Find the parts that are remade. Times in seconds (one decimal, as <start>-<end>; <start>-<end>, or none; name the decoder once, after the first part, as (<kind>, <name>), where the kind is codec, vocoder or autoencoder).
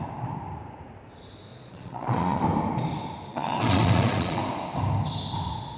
1.5-2.4 (vocoder, Vocos); 3.3-4.4